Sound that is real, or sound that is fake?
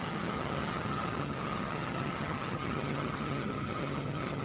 fake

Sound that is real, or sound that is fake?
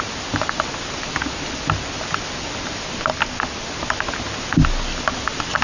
real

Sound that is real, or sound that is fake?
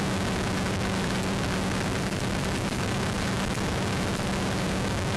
real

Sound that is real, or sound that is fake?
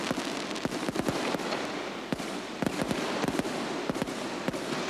real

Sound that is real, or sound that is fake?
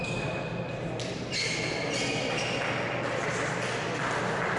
real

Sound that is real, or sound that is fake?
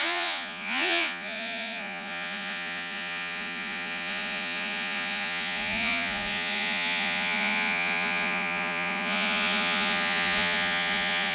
fake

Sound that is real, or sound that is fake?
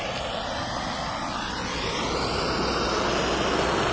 real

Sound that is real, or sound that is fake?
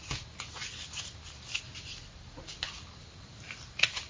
real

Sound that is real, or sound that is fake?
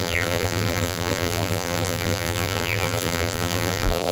fake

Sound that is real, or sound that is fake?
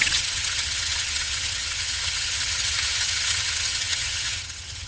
fake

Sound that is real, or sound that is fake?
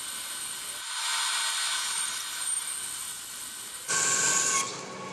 real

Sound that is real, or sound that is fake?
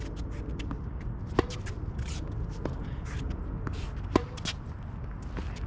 real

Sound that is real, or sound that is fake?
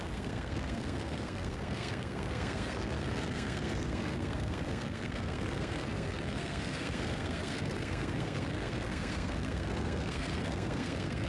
fake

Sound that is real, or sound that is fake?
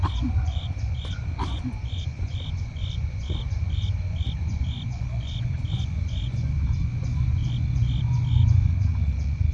fake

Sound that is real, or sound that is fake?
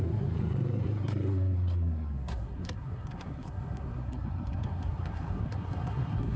fake